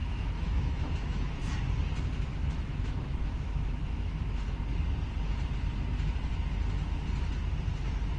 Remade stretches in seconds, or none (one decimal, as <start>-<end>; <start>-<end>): 0.0-1.3; 2.3-4.5